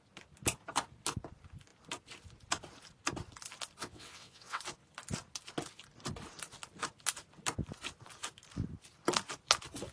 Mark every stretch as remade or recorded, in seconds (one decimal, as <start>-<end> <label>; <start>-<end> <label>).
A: 0.0-3.8 recorded; 3.8-4.6 remade; 4.6-9.9 recorded